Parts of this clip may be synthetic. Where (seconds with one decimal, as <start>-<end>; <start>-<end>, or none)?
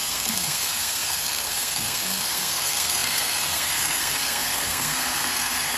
0.0-5.8